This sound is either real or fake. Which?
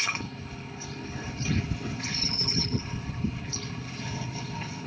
fake